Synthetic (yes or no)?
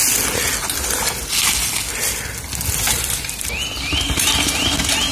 no